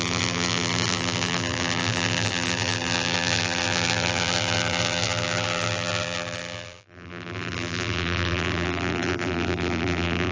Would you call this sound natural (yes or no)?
no